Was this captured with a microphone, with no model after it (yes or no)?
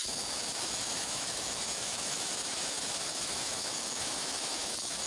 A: no